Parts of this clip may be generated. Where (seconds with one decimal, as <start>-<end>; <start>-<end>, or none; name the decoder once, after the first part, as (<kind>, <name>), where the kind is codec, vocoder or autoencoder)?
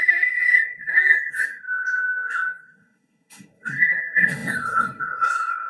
0.0-5.7 (codec, SNAC)